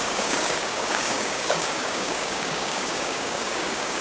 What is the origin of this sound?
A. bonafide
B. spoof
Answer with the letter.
B